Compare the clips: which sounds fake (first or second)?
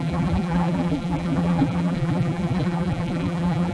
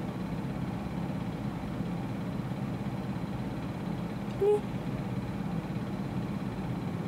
first